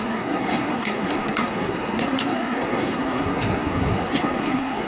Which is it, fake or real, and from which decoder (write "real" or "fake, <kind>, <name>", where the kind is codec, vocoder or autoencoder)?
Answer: fake, codec, SNAC